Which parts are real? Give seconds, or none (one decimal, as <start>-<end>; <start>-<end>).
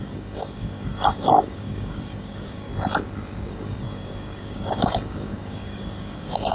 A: 2.7-3.5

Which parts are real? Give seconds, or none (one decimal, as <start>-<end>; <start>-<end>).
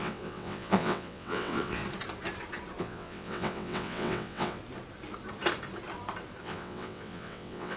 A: 1.8-2.8; 4.6-6.4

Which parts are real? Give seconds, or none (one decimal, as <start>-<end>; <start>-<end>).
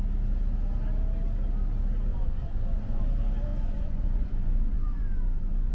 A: 0.0-2.1; 3.0-3.5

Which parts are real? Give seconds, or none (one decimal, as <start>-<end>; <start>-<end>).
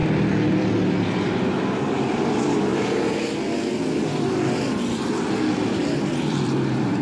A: 0.0-1.0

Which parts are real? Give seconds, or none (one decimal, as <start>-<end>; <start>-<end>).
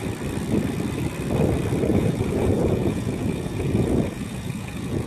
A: 0.0-1.9